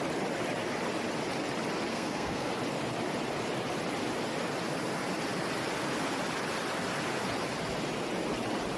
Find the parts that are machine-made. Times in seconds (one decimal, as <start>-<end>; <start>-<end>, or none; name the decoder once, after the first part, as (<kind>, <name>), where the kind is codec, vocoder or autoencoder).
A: 1.9-2.5 (codec, SNAC)